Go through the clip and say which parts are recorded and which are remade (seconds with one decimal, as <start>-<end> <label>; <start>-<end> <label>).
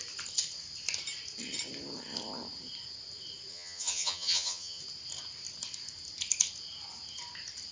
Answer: 0.0-3.5 recorded; 3.5-4.8 remade; 4.8-7.7 recorded